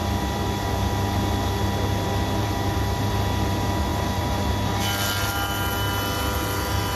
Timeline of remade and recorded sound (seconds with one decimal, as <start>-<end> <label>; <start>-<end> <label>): 0.0-2.4 recorded; 2.4-3.1 remade; 3.1-3.9 recorded; 3.9-4.4 remade; 4.4-7.0 recorded